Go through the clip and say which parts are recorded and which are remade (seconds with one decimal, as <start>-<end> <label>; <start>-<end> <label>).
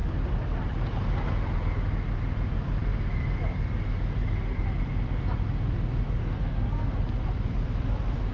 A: 0.0-6.2 recorded; 6.2-6.9 remade; 6.9-8.3 recorded